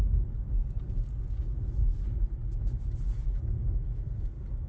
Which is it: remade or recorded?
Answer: recorded